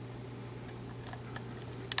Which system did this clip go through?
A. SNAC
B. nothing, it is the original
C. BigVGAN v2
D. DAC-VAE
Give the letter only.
B